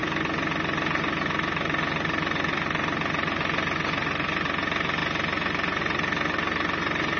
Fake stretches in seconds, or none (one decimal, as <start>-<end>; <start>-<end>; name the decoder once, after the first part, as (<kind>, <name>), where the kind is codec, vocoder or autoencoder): none